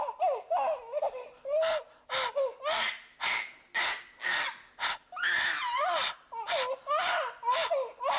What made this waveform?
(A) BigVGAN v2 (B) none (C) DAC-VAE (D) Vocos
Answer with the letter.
B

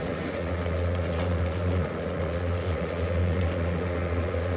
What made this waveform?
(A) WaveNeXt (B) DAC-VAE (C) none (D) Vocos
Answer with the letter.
D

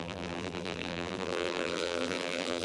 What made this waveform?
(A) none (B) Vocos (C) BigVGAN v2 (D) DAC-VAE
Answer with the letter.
C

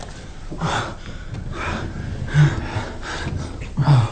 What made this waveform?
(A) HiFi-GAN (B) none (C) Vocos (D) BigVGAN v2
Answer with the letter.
B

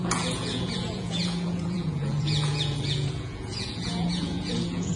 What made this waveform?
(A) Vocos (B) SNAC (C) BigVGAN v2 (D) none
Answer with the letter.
A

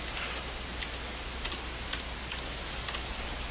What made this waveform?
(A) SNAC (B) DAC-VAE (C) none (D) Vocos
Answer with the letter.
C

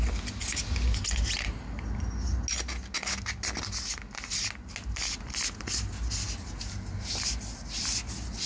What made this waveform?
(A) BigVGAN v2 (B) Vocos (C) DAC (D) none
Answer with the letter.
D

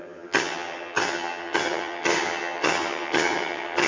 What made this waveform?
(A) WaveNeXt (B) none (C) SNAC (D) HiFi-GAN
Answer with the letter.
D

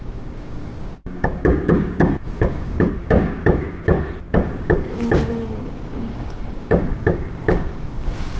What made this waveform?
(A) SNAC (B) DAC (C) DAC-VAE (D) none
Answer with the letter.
B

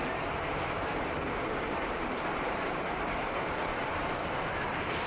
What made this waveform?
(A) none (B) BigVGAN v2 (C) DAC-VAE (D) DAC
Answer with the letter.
B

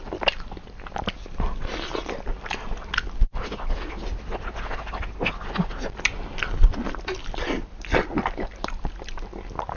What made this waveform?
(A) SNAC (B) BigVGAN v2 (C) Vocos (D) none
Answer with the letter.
D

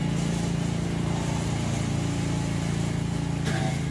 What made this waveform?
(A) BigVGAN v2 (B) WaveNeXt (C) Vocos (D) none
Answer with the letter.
D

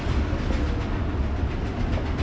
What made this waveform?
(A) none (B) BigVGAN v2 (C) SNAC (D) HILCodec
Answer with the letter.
A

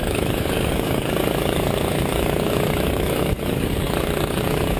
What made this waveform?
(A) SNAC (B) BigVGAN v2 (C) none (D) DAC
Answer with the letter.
D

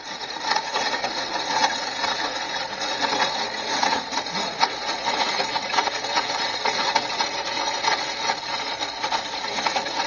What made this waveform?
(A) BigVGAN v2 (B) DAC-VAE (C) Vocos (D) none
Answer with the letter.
C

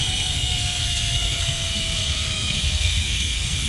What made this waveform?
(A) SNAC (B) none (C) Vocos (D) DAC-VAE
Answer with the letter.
A